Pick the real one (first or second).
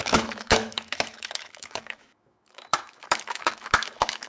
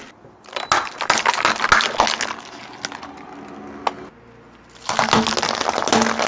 second